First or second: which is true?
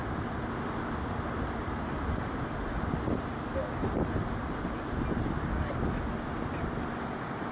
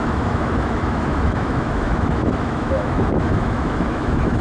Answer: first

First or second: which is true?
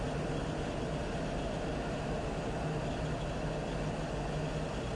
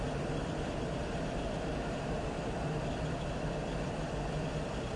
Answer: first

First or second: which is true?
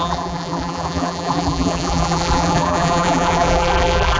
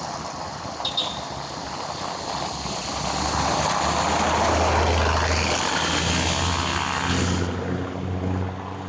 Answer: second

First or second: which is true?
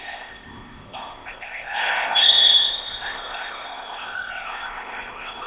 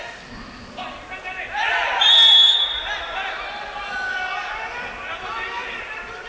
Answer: second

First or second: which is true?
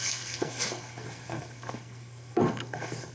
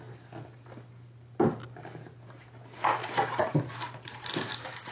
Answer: second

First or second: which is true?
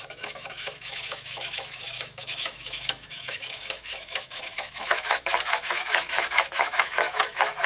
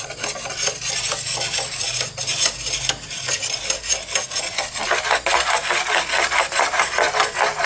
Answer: second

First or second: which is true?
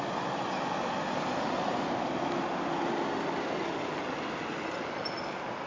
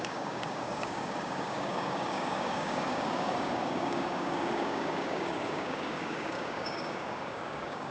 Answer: first